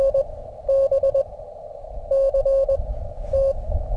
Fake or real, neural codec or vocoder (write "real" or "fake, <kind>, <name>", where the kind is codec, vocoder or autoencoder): real